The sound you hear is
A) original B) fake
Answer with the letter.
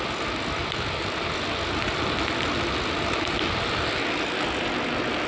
A